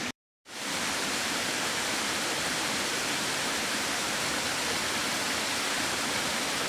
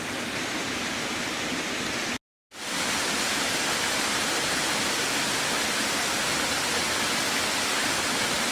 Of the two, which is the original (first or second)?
second